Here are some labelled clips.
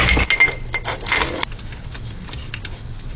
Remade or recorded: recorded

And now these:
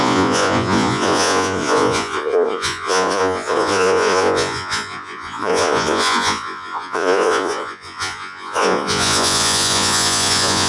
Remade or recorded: remade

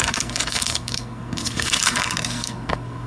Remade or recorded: remade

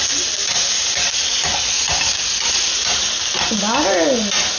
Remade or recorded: recorded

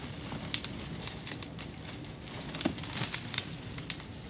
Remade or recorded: recorded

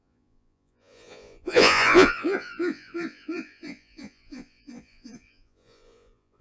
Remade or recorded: remade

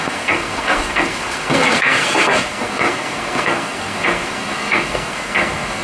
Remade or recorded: remade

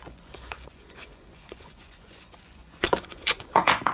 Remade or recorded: remade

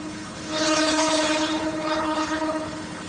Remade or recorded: remade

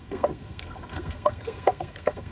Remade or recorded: remade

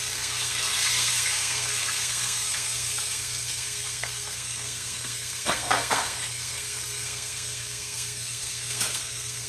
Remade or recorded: remade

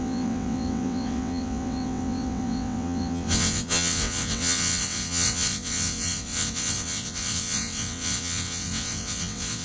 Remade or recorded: remade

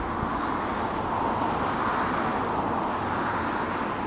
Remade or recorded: recorded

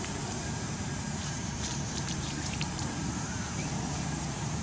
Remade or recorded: remade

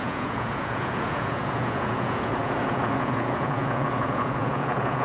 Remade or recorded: remade